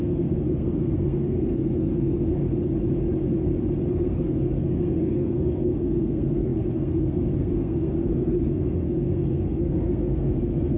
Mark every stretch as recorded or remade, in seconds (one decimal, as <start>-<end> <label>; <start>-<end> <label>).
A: 0.0-2.4 remade; 2.4-3.9 recorded; 3.9-10.8 remade